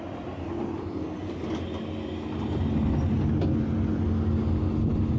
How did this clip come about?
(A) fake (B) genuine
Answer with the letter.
B